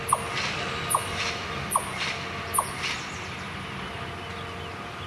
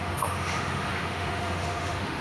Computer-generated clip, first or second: second